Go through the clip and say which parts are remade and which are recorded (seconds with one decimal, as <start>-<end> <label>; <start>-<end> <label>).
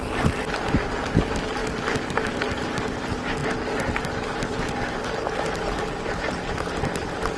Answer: 0.0-7.4 recorded